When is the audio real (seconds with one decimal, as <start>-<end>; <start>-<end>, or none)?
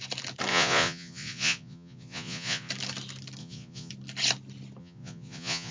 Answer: 0.0-0.5; 2.7-3.4; 3.9-4.8